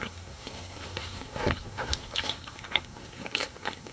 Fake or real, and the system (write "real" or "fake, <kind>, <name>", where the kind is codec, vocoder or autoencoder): fake, codec, SNAC